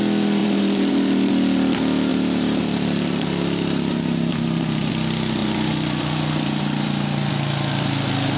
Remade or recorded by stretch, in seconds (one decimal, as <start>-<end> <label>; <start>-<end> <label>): 0.0-0.4 recorded; 0.4-1.3 remade; 1.3-2.1 recorded; 2.1-4.9 remade; 4.9-5.4 recorded; 5.4-7.3 remade; 7.3-8.4 recorded